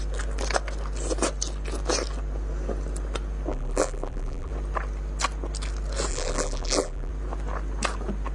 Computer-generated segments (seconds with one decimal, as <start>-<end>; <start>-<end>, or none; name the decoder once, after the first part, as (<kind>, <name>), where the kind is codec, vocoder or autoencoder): 3.5-4.5 (vocoder, BigVGAN v2); 6.1-7.1